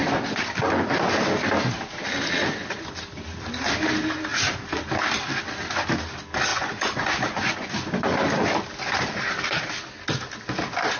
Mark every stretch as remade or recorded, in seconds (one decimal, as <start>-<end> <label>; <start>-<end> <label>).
0.0-6.5 recorded; 6.5-7.7 remade; 7.7-11.0 recorded